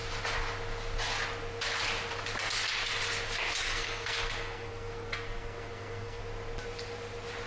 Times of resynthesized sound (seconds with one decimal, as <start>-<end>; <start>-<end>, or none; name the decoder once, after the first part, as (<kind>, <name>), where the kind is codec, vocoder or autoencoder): 3.6-6.2 (codec, SNAC)